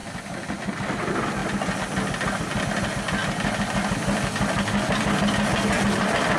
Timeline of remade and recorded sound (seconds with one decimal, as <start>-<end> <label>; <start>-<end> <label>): 0.0-6.4 recorded